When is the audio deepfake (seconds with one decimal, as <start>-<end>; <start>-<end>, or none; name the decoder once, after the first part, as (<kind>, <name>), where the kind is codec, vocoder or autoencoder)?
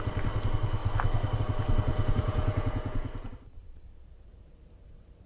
1.9-3.3 (vocoder, Vocos)